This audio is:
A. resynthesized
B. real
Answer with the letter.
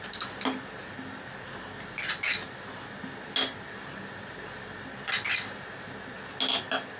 B